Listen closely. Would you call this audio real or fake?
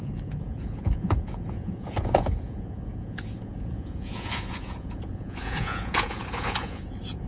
fake